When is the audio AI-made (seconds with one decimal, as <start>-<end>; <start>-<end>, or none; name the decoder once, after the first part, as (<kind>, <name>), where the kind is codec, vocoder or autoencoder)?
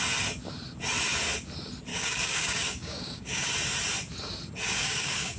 1.9-3.5 (codec, DAC); 4.8-5.4